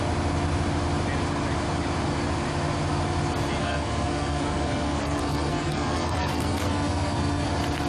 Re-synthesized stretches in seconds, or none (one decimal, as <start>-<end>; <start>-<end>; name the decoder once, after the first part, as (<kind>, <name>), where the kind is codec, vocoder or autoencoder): 3.6-7.5 (codec, SNAC)